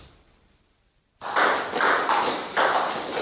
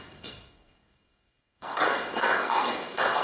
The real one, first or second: first